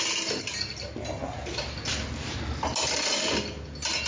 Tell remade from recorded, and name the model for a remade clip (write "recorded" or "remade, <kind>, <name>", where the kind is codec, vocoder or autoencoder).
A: recorded